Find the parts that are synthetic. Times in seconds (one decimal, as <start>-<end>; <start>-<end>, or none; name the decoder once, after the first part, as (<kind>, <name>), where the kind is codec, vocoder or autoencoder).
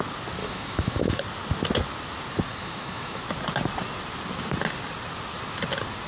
0.4-1.2 (autoencoder, DAC-VAE); 2.5-3.2